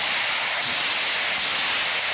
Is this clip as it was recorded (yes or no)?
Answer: yes